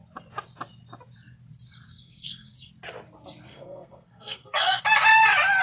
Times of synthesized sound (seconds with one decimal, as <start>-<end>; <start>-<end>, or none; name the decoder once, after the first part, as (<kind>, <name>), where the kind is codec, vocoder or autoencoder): 1.9-2.7 (codec, SNAC); 3.5-4.8